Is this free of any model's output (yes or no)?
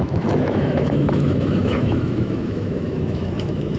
no